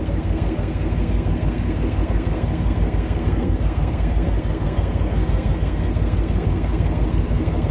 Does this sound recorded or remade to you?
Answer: remade